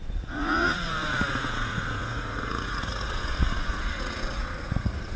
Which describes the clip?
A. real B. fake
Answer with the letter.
B